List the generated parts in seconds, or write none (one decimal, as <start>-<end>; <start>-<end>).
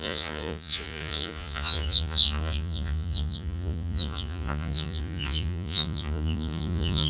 0.0-7.1